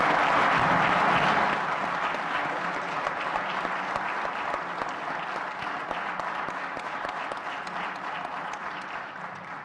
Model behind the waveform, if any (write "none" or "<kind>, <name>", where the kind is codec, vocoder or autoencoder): none